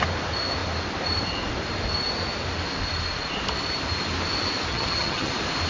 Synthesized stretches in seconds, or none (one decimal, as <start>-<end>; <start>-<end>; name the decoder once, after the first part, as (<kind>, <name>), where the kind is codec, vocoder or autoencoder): 4.7-5.3 (vocoder, HiFi-GAN)